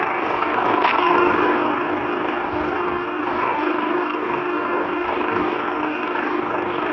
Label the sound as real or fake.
fake